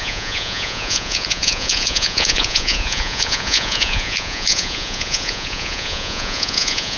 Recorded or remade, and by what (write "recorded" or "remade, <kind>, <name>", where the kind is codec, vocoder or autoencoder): remade, vocoder, Vocos